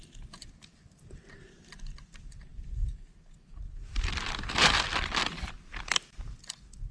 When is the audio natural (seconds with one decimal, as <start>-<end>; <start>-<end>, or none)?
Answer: 0.0-6.9